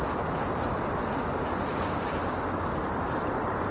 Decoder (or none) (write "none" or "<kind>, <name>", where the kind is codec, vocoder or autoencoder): none